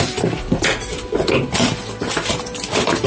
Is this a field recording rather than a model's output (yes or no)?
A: yes